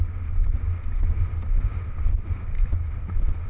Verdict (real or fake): real